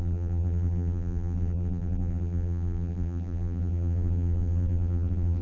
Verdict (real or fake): fake